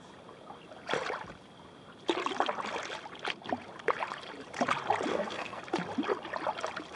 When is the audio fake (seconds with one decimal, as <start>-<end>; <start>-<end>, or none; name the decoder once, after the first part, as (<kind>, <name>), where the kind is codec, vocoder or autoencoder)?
5.1-5.6 (codec, SNAC)